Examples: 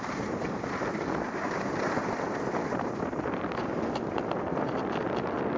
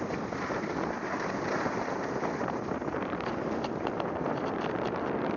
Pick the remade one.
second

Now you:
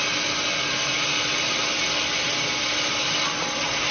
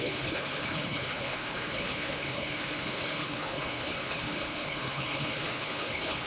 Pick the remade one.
second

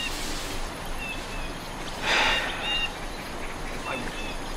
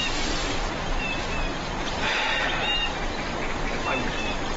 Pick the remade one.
second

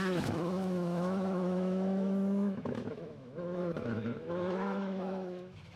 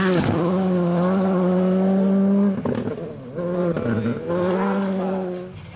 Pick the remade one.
first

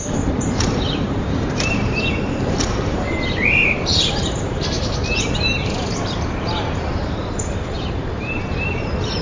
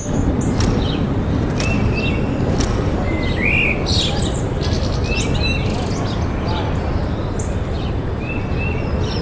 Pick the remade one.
first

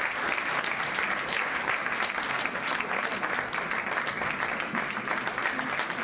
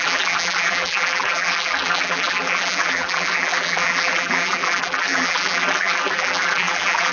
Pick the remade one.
second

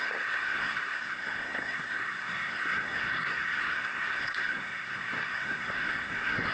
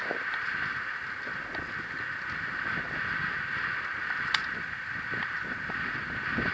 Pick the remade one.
first